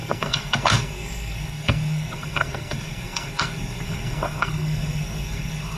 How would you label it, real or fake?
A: fake